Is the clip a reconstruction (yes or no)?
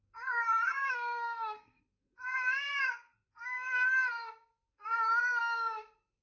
yes